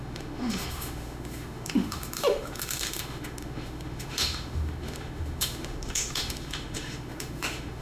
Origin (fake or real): fake